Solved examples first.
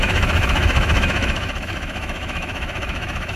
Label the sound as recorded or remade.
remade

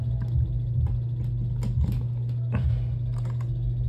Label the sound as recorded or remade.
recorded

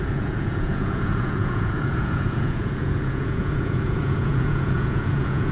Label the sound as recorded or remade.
remade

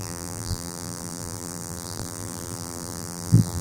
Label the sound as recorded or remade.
remade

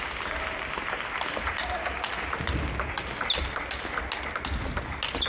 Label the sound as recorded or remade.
recorded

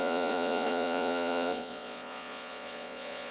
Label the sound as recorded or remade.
remade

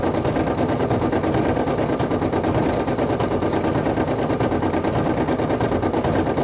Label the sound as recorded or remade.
recorded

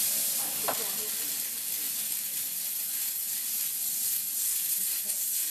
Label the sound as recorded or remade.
recorded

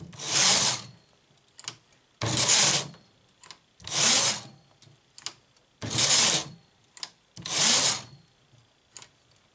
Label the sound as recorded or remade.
recorded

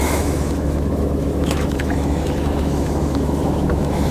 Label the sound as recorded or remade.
remade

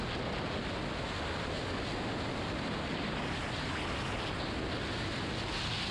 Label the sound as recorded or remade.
recorded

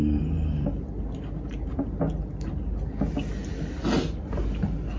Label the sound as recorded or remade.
recorded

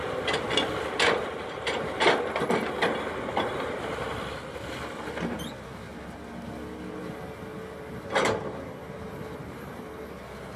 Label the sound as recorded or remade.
recorded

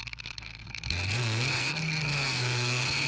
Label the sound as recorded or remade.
remade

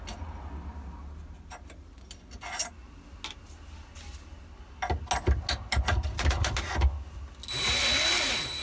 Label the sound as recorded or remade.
recorded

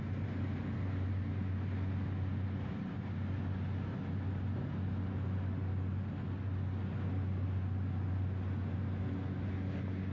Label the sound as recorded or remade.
recorded